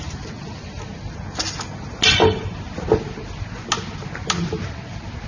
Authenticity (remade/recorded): recorded